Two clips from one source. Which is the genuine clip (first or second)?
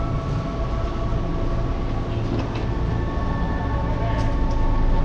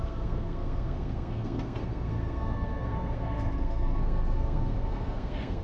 first